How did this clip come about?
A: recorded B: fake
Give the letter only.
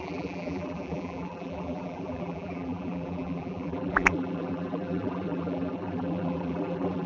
B